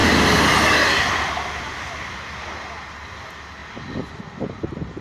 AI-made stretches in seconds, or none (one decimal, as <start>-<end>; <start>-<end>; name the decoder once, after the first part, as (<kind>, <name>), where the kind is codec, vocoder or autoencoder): 0.0-2.2 (vocoder, BigVGAN v2); 3.6-4.2